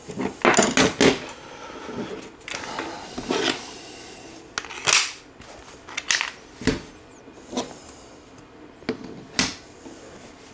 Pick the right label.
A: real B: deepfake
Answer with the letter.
A